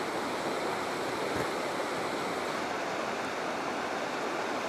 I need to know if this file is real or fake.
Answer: real